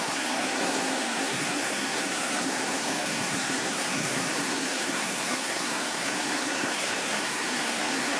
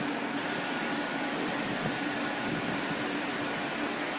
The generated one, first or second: first